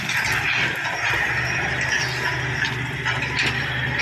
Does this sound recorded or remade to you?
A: recorded